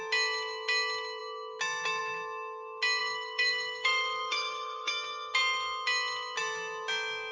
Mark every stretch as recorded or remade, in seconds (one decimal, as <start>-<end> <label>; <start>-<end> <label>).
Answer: 0.0-3.0 recorded; 3.0-4.9 remade; 4.9-7.3 recorded